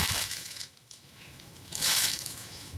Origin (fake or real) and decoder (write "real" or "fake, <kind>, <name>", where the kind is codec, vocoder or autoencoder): fake, autoencoder, DAC-VAE